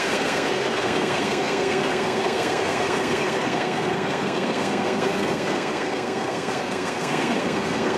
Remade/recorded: remade